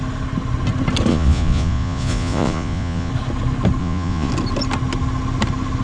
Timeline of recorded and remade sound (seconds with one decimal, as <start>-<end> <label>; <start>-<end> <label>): 0.0-1.1 recorded; 1.1-3.1 remade; 3.1-3.8 recorded; 3.8-4.3 remade; 4.3-5.8 recorded